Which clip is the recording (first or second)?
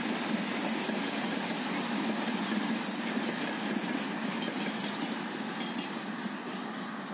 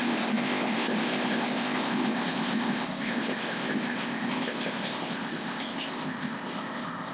first